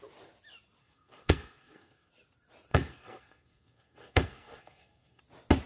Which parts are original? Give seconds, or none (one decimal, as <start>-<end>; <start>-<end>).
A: 0.0-0.8; 2.1-2.7; 5.2-5.7